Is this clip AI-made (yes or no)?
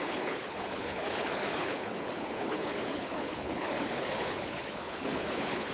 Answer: yes